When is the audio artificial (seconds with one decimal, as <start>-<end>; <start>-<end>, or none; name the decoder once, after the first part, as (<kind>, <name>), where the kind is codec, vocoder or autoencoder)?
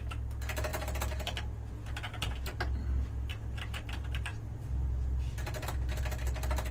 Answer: none